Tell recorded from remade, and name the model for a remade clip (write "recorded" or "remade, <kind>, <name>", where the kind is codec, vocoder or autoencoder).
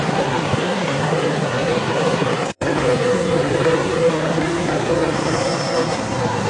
remade, codec, SNAC